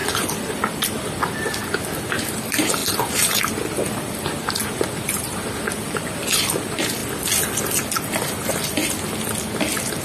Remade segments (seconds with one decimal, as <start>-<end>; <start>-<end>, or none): 2.1-7.0